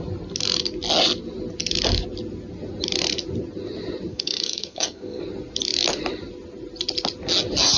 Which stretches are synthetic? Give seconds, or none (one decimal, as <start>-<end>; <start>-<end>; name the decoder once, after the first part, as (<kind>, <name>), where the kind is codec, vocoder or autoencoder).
4.1-5.2 (codec, SNAC)